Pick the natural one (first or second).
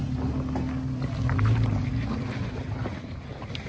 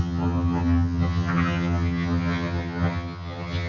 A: first